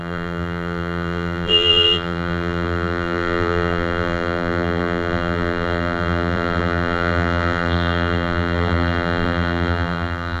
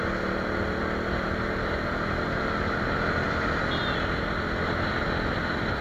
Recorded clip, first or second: second